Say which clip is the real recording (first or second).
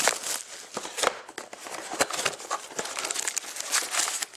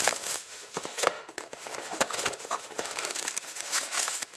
first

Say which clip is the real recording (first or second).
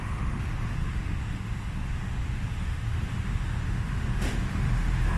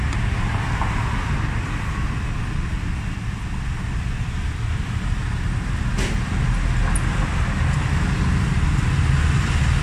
second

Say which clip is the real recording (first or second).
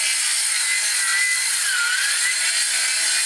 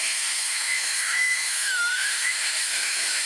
first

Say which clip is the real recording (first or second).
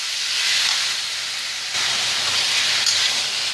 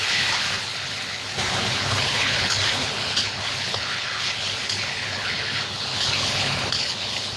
first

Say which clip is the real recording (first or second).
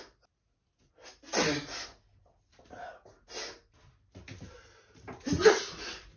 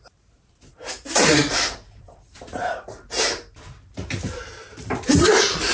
first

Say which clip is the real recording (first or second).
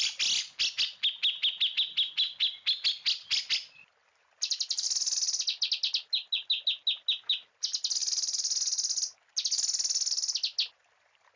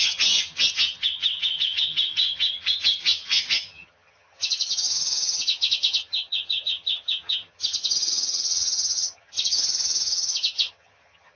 first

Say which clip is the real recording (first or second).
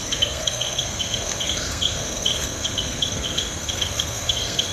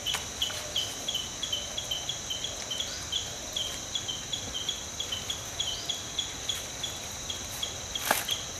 second